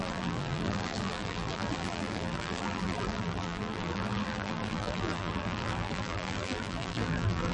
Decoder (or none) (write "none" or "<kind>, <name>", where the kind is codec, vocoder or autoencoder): vocoder, BigVGAN v2